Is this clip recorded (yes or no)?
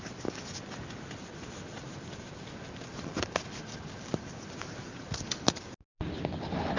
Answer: yes